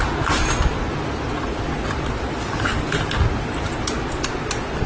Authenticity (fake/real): real